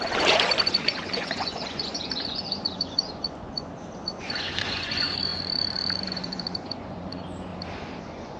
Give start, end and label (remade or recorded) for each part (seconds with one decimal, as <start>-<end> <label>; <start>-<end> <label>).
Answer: 0.0-7.5 remade; 7.5-8.0 recorded; 8.0-8.4 remade